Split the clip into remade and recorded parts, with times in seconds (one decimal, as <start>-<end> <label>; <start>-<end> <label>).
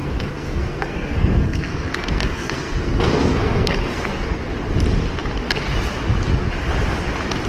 0.0-4.5 remade; 4.5-7.5 recorded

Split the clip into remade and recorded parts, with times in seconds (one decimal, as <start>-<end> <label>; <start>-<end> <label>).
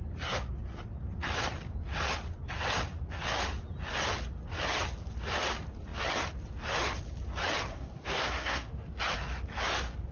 0.0-7.7 recorded; 7.7-8.7 remade; 8.7-10.1 recorded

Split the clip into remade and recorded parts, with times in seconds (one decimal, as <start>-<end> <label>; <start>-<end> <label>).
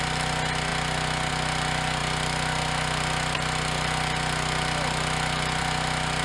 0.0-6.2 recorded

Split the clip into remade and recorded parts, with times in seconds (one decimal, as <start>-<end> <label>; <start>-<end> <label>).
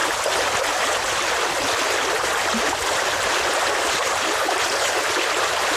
0.0-5.8 recorded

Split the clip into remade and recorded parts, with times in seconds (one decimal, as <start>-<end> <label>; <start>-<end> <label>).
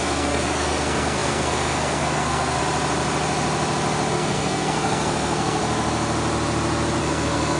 0.0-2.6 remade; 2.6-4.1 recorded; 4.1-5.6 remade; 5.6-7.0 recorded; 7.0-7.6 remade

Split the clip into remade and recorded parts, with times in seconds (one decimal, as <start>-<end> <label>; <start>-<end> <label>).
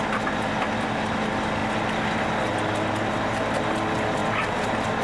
0.0-5.0 recorded